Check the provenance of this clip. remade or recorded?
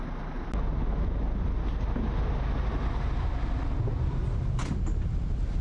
recorded